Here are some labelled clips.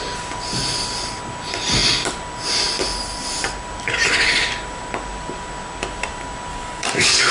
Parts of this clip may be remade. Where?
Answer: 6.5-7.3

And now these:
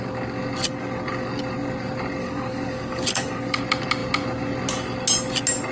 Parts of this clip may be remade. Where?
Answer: 2.2-3.6

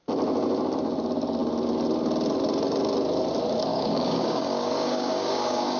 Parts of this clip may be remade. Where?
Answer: 3.7-5.8

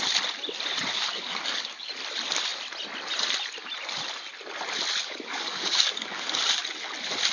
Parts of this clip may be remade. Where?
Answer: 0.9-1.9; 5.0-6.4

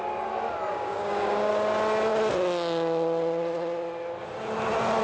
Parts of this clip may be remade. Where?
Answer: 0.7-1.5

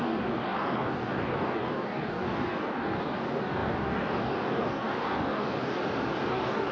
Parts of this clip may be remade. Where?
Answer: 0.0-5.8; 6.3-6.7